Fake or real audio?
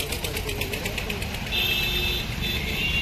real